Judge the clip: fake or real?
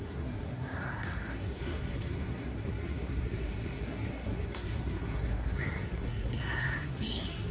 fake